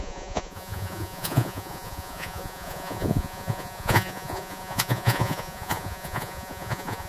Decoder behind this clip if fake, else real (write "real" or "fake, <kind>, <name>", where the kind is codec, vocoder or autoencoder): fake, vocoder, Vocos